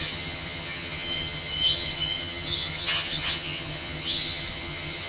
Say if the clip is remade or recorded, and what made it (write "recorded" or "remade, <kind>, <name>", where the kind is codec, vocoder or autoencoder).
remade, vocoder, HiFi-GAN